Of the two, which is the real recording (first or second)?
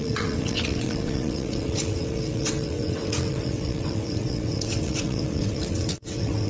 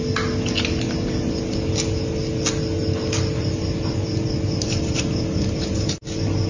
second